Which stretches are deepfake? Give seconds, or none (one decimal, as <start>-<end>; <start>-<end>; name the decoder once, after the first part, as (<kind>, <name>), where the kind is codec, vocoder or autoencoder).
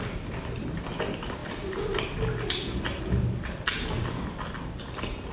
none